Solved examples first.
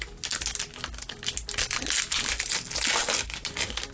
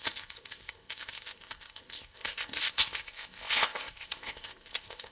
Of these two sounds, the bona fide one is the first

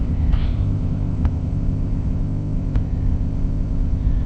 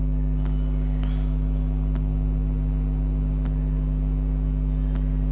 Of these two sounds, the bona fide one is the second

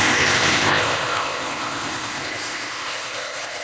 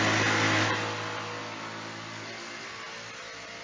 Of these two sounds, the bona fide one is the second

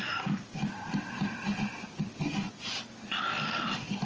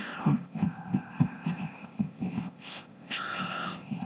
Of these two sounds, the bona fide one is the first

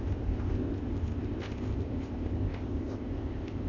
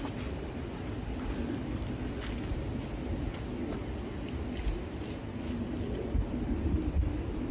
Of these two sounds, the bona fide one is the second